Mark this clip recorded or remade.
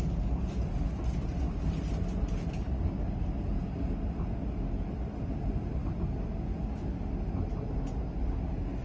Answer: recorded